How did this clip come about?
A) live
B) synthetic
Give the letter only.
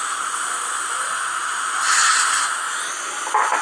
A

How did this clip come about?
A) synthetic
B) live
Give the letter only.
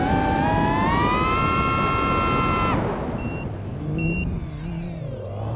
B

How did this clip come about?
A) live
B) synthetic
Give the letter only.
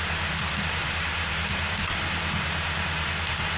B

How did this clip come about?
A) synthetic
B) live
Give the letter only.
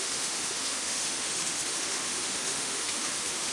A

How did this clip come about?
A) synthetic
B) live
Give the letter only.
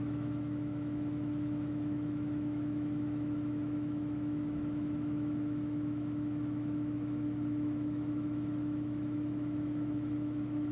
A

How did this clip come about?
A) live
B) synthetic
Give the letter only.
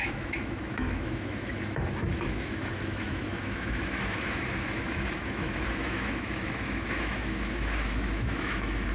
B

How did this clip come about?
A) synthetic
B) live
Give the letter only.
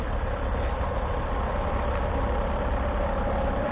A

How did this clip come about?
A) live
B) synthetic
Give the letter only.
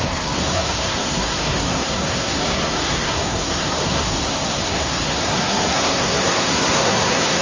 B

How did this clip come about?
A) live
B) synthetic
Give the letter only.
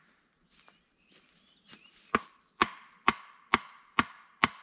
A